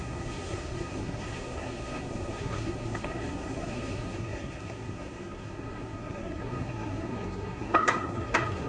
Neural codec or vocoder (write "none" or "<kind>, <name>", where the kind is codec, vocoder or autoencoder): codec, SNAC